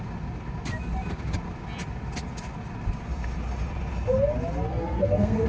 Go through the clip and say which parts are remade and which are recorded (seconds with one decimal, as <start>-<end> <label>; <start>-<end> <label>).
0.0-4.7 recorded; 4.7-5.5 remade